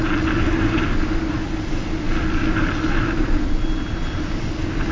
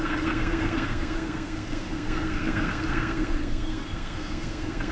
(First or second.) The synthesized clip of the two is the second